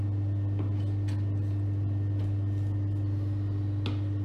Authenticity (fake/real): real